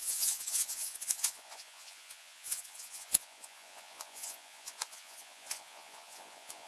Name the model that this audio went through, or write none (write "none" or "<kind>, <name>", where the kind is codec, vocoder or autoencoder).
vocoder, Vocos